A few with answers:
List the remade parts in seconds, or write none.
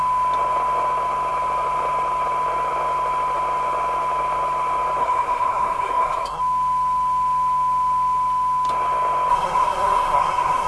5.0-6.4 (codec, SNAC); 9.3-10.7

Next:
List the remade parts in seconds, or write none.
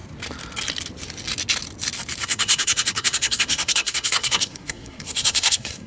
2.2-5.9 (codec, SNAC)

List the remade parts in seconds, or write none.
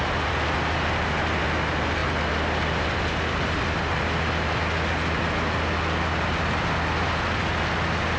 none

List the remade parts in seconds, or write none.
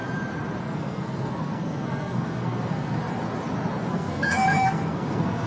0.6-3.0 (codec, SNAC); 3.9-5.5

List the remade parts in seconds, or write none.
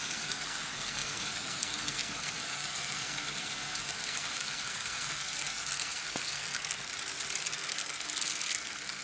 0.0-6.9 (codec, SNAC); 7.5-9.0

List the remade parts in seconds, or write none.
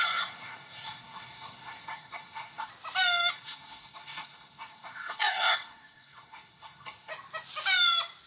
0.0-2.7 (codec, SNAC); 3.3-7.1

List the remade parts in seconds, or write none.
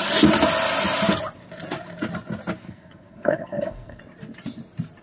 2.6-4.0 (codec, SNAC)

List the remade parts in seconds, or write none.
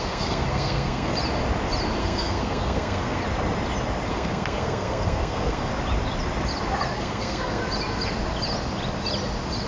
0.0-1.1 (codec, SNAC); 2.0-3.2; 4.1-5.7; 6.9-7.6